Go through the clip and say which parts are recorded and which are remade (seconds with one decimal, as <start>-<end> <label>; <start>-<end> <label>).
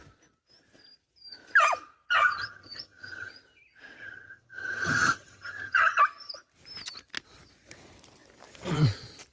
0.0-2.1 recorded; 2.1-3.3 remade; 3.3-4.0 recorded; 4.0-6.0 remade; 6.0-9.3 recorded